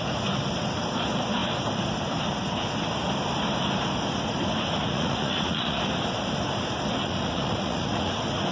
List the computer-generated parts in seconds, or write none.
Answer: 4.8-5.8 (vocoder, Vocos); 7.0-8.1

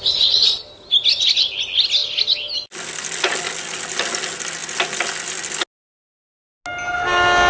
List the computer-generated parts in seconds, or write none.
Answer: none

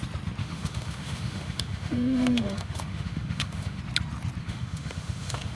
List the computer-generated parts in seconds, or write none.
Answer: 0.4-3.8 (autoencoder, DAC-VAE); 4.4-5.6

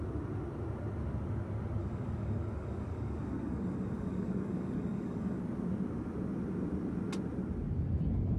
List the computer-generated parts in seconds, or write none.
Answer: 1.8-5.4 (codec, DAC)

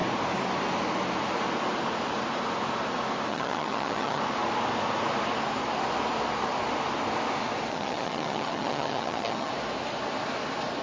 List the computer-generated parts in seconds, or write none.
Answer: 3.3-4.2 (vocoder, HiFi-GAN); 7.7-9.5

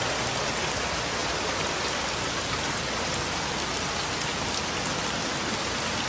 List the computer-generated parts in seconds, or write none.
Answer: none

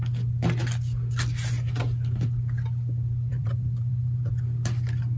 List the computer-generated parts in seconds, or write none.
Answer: 3.3-4.3 (vocoder, BigVGAN v2)

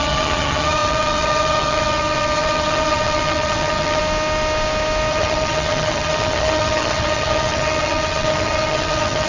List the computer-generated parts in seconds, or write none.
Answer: 0.0-4.0 (vocoder, HiFi-GAN); 5.1-9.3